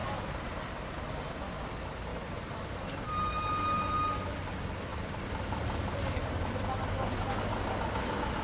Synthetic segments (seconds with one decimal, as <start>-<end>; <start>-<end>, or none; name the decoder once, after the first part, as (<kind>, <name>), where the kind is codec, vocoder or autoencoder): 0.0-0.6 (vocoder, BigVGAN v2); 4.9-7.4